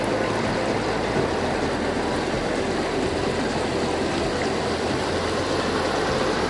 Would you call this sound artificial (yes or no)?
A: no